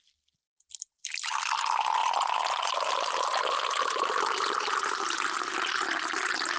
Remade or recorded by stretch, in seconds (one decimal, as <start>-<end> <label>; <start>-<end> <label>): 0.0-6.6 recorded

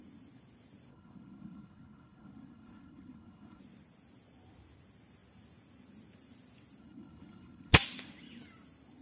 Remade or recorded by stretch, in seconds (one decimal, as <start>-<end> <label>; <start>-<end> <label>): 0.0-0.9 recorded; 0.9-3.6 remade; 3.6-6.8 recorded; 6.8-7.7 remade; 7.7-9.0 recorded

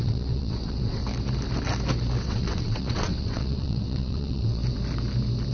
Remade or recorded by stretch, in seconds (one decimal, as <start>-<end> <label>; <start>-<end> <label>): 0.0-1.0 remade; 1.0-2.2 recorded; 2.2-4.6 remade; 4.6-5.5 recorded

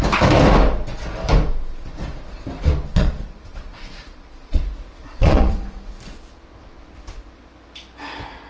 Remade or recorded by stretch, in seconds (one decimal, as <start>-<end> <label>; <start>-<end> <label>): 0.0-2.9 recorded; 2.9-4.6 remade; 4.6-5.0 recorded; 5.0-5.6 remade; 5.6-8.5 recorded

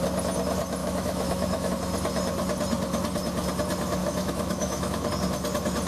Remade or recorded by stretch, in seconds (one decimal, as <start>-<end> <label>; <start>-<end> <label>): 0.0-0.8 recorded; 0.8-1.7 remade; 1.7-4.0 recorded; 4.0-5.1 remade; 5.1-5.9 recorded